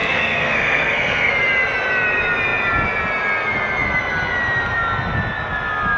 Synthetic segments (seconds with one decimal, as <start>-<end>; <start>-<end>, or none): 0.0-1.3